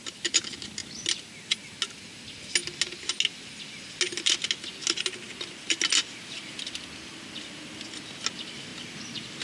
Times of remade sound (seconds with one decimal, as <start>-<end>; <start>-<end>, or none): none

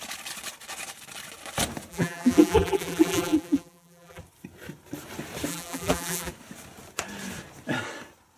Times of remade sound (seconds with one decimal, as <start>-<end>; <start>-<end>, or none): 1.9-4.2; 5.5-6.3